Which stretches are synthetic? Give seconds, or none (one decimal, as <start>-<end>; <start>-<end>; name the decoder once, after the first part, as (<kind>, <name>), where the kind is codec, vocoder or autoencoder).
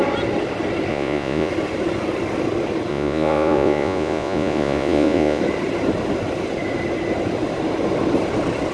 0.9-1.5 (vocoder, Vocos); 2.9-5.4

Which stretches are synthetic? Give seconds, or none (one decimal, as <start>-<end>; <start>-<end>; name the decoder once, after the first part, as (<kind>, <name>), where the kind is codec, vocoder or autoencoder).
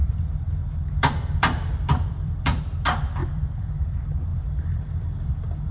0.0-2.6 (vocoder, BigVGAN v2); 3.2-3.9; 4.3-5.3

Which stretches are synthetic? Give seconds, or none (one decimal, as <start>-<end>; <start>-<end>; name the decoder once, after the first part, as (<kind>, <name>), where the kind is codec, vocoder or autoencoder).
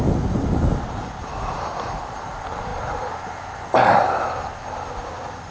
none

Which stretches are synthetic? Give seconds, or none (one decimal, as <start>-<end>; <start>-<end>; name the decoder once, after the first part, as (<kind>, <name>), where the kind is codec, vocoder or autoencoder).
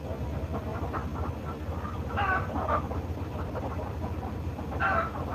0.7-3.7 (vocoder, BigVGAN v2)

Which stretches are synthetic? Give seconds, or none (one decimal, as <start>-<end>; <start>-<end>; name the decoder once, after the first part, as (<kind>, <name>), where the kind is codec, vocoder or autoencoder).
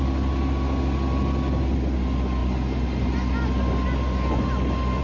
none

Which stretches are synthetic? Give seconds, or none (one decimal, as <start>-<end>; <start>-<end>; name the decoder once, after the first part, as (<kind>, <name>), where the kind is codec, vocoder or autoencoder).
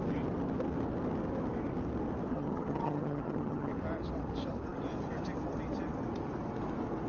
2.3-3.7 (vocoder, HiFi-GAN)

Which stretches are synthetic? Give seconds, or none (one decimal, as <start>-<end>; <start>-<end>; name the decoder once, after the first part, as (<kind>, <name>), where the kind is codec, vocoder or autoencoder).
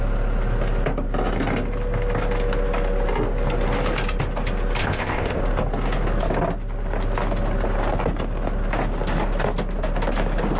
4.8-5.4 (codec, ZipCodec)